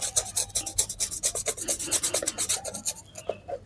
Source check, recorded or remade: recorded